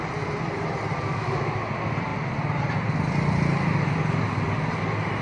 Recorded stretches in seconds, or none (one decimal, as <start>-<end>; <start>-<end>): 0.0-1.1; 1.7-5.2